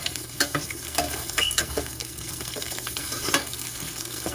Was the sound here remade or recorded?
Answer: remade